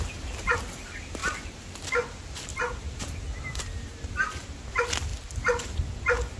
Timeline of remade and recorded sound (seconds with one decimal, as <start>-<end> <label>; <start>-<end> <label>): 0.0-6.4 recorded